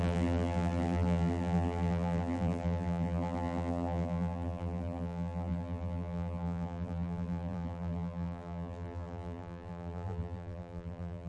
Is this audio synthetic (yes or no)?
yes